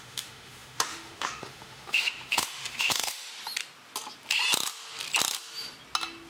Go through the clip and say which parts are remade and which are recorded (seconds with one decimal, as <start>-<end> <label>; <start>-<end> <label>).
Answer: 0.0-3.3 remade; 3.3-6.3 recorded